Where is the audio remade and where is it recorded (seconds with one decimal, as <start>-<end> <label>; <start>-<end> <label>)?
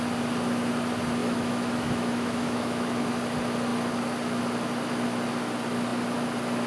0.0-1.2 recorded; 1.2-3.1 remade; 3.1-6.7 recorded